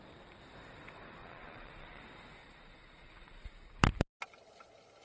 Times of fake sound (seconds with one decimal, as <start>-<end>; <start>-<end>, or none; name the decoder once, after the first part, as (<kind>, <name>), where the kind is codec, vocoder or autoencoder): 1.2-2.0 (vocoder, Vocos); 2.4-3.8